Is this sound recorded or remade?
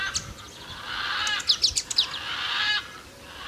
recorded